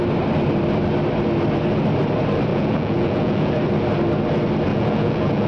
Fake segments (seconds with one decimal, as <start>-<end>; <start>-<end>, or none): 2.5-3.5; 4.7-5.5